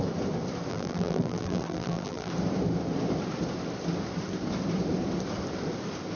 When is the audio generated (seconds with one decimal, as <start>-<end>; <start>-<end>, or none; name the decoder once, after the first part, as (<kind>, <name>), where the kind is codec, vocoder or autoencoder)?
0.7-2.3 (vocoder, BigVGAN v2)